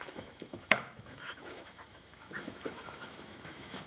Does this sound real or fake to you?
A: fake